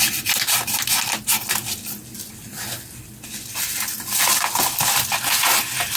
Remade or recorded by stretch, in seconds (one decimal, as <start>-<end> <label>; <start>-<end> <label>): 0.0-6.0 recorded